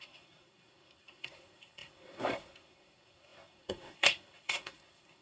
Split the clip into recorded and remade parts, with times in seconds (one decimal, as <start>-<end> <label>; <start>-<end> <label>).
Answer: 0.0-5.2 remade